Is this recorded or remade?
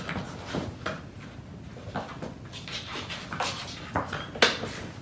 recorded